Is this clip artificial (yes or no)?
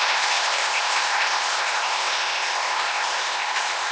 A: yes